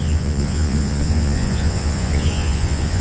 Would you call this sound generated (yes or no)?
yes